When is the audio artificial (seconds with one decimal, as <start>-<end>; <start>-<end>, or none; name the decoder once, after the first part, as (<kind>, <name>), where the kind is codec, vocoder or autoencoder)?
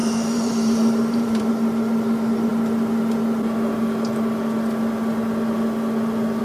0.0-1.5 (vocoder, BigVGAN v2)